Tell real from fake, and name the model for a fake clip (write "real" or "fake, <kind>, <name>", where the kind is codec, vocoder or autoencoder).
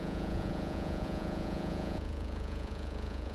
fake, vocoder, Vocos